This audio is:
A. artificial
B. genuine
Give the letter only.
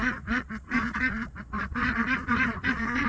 A